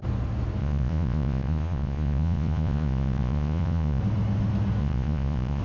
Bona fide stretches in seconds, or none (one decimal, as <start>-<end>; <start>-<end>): 0.0-0.6; 4.0-4.8